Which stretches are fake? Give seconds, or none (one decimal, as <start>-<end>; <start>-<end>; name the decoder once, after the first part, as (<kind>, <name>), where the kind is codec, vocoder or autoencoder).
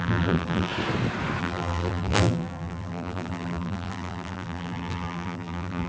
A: 0.0-0.7 (vocoder, BigVGAN v2); 1.4-5.9